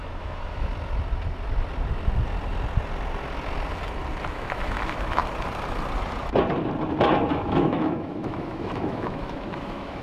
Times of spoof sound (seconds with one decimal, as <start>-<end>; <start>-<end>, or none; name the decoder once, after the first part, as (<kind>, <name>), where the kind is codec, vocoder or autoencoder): 0.0-0.7 (autoencoder, DAC-VAE); 4.3-5.2; 7.3-10.0